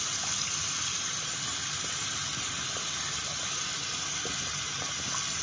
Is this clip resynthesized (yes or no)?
no